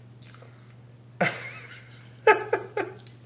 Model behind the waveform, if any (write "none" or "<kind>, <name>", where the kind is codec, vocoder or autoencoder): none